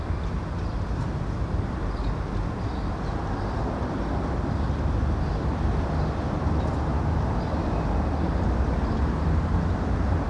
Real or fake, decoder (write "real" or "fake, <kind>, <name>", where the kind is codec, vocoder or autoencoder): real